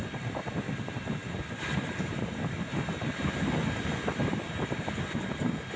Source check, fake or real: real